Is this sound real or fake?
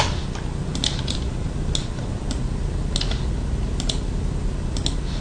real